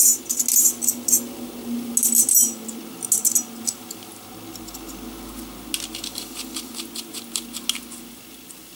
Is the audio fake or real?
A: real